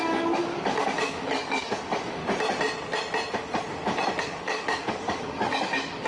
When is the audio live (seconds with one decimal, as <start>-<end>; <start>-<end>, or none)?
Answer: 2.2-4.2